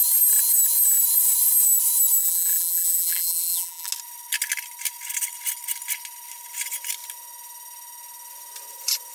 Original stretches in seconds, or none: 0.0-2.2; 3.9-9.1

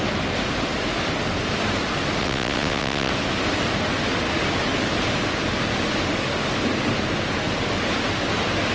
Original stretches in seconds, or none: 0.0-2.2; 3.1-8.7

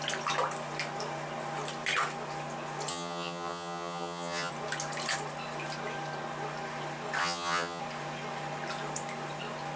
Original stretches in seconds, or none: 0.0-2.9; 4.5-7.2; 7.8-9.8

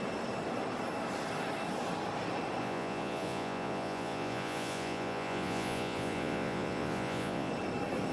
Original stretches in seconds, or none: 0.0-2.6; 7.5-8.1